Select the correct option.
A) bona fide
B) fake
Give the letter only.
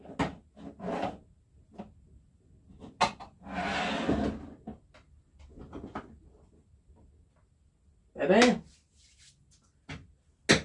A